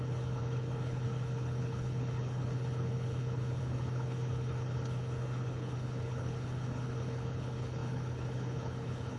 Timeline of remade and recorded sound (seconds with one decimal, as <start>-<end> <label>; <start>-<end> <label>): 0.0-9.2 remade